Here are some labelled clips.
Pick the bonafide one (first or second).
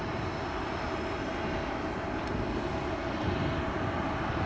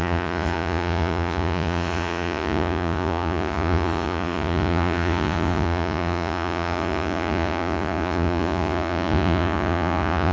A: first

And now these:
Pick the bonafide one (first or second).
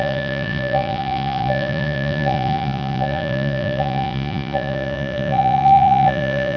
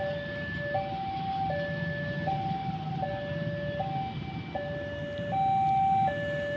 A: second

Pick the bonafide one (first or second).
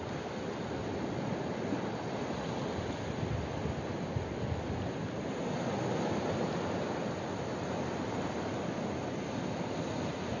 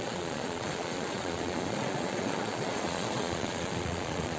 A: first